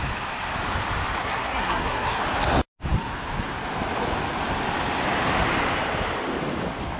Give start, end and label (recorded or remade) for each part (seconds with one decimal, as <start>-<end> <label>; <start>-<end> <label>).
0.0-1.2 recorded; 1.2-2.2 remade; 2.2-7.0 recorded